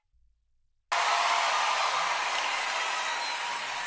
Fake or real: real